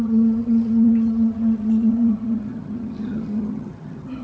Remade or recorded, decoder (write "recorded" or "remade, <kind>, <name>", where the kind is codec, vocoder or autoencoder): remade, vocoder, HiFi-GAN